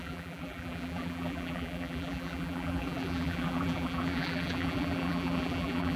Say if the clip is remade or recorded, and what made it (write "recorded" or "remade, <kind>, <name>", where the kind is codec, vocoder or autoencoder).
remade, vocoder, BigVGAN v2